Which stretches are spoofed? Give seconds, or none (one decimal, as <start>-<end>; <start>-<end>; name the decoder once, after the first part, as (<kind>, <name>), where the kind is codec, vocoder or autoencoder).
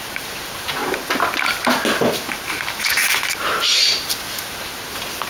0.0-0.8 (vocoder, BigVGAN v2); 2.0-5.3